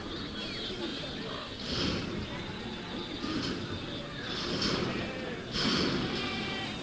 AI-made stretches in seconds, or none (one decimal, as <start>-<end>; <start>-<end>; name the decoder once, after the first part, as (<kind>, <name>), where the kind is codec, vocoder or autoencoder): none